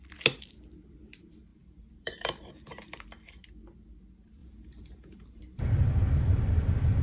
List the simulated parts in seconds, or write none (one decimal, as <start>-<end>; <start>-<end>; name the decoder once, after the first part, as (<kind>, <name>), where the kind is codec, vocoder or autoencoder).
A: 1.5-3.3 (vocoder, BigVGAN v2); 4.4-5.6